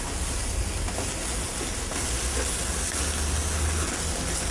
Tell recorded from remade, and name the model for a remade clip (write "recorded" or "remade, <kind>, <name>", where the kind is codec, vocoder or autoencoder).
recorded